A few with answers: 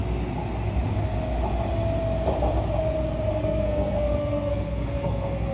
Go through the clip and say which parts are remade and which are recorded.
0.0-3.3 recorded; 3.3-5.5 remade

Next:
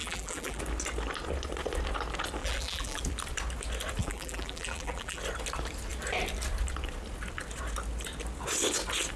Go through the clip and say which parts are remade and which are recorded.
0.0-0.6 remade; 0.6-2.4 recorded; 2.4-3.0 remade; 3.0-4.0 recorded; 4.0-5.2 remade; 5.2-9.2 recorded

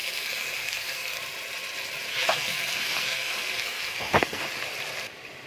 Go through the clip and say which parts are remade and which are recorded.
0.0-1.2 remade; 1.2-2.1 recorded; 2.1-4.4 remade; 4.4-5.5 recorded